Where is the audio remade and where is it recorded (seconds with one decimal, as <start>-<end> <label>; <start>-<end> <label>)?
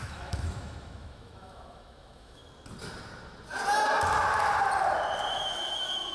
0.0-2.4 remade; 2.4-5.3 recorded; 5.3-6.1 remade